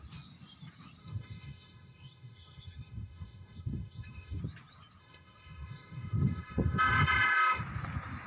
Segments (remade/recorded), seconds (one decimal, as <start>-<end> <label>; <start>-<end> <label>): 0.0-1.0 recorded; 1.0-4.4 remade; 4.4-5.0 recorded; 5.0-7.6 remade; 7.6-8.3 recorded